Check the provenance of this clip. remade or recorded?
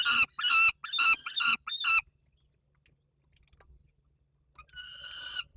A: recorded